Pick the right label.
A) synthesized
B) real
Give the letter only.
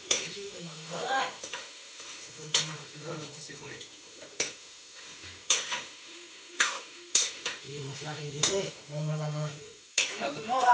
A